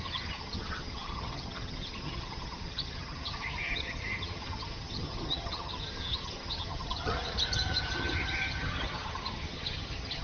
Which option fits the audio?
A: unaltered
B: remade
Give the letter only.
B